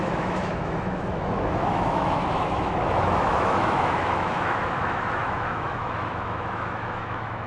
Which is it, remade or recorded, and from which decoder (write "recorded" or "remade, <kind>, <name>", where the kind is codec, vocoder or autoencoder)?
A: remade, autoencoder, DAC-VAE